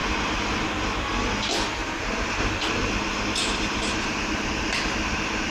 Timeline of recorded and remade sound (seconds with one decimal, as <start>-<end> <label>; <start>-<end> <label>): 0.0-1.8 recorded; 1.8-4.9 remade; 4.9-5.5 recorded